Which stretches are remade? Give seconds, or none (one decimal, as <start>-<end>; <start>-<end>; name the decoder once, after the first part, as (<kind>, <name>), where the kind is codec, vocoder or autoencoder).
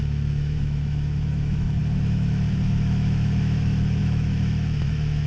0.0-5.3 (autoencoder, DAC-VAE)